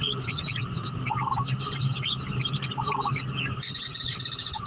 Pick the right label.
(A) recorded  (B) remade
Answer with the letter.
A